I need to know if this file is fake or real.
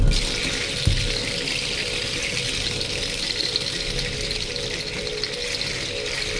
real